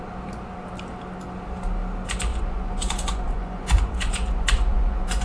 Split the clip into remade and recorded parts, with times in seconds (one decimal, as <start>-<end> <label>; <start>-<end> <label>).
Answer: 0.0-2.3 recorded; 2.3-5.2 remade